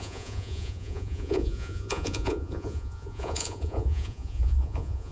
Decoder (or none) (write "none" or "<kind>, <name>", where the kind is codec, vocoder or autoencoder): vocoder, Vocos